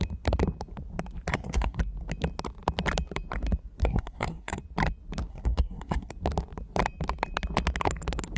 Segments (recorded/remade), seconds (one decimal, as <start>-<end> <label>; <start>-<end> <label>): 0.0-1.3 recorded; 1.3-1.8 remade; 1.8-3.8 recorded; 3.8-4.6 remade; 4.6-5.3 recorded; 5.3-6.1 remade; 6.1-8.4 recorded